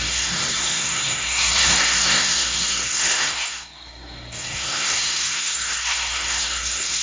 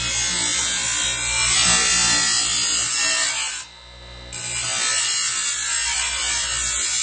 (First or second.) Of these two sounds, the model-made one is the first